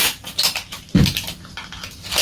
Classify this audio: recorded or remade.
recorded